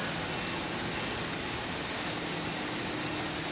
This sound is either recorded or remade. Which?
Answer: recorded